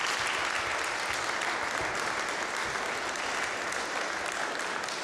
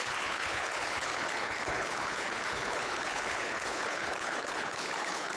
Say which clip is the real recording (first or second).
first